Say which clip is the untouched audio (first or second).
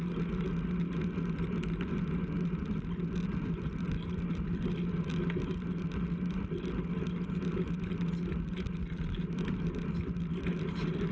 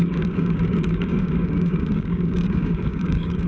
first